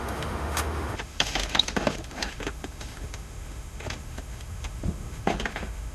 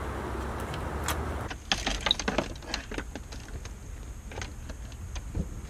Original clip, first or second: second